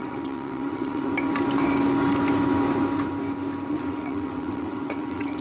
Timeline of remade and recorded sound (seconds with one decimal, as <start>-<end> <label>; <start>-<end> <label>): 0.0-1.1 remade; 1.1-3.7 recorded; 3.7-5.4 remade

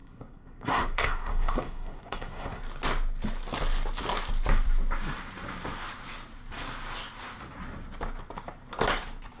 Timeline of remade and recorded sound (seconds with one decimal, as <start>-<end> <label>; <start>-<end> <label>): 0.0-2.6 remade; 2.6-9.4 recorded

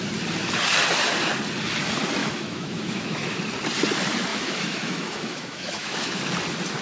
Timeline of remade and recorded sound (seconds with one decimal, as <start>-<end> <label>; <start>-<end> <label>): 0.0-2.2 recorded; 2.2-3.4 remade; 3.4-4.3 recorded; 4.3-6.2 remade; 6.2-6.8 recorded

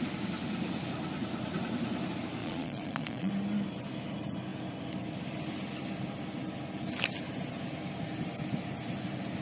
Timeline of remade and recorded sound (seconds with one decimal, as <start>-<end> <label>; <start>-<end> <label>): 0.0-2.4 recorded; 2.4-3.3 remade; 3.3-9.4 recorded

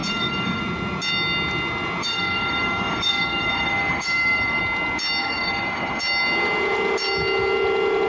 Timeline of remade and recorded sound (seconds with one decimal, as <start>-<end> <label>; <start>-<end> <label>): 0.0-0.6 remade; 0.6-2.0 recorded; 2.0-4.6 remade; 4.6-5.2 recorded; 5.2-6.0 remade; 6.0-8.1 recorded

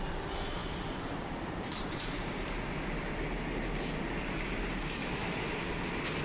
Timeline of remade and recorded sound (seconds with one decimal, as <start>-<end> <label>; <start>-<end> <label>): 0.0-2.3 remade; 2.3-4.5 recorded; 4.5-5.0 remade; 5.0-6.2 recorded